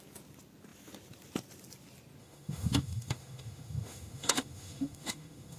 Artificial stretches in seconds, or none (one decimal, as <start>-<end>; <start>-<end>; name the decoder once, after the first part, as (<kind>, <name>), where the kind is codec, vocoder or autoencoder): 2.2-5.6 (autoencoder, DAC-VAE)